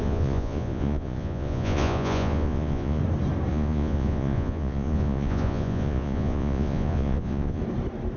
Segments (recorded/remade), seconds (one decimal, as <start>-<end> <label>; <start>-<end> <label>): 0.0-3.0 remade; 3.0-3.5 recorded; 3.5-7.6 remade; 7.6-8.2 recorded